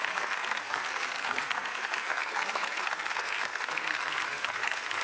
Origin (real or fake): fake